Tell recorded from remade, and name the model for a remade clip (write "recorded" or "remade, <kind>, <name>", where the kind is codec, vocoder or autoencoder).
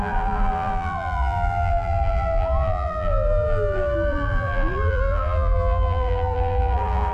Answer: remade, vocoder, BigVGAN v2